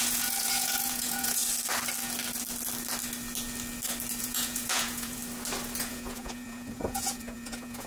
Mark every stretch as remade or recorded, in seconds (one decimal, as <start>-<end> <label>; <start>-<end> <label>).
0.0-1.4 remade; 1.4-4.2 recorded; 4.2-5.2 remade; 5.2-5.8 recorded; 5.8-7.9 remade